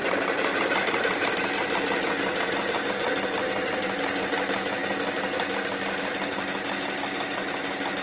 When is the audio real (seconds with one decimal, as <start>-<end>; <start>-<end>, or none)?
0.0-8.0